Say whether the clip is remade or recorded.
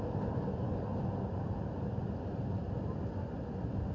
recorded